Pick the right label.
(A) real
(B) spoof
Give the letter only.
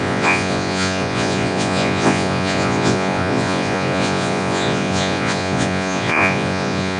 B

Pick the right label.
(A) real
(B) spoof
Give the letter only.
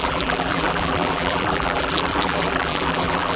B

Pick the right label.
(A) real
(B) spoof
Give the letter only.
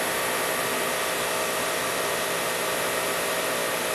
A